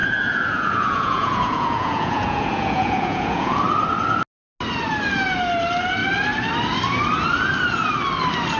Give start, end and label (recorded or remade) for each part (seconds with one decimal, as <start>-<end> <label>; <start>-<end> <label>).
0.0-3.6 remade; 3.6-8.6 recorded